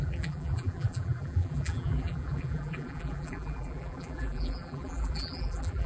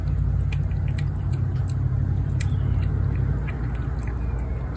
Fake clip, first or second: first